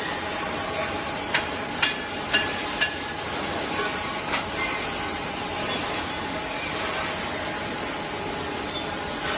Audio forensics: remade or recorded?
recorded